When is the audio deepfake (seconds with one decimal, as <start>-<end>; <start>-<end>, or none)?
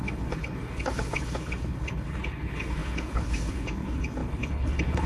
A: 0.0-5.1